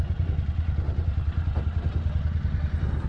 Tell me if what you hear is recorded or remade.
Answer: recorded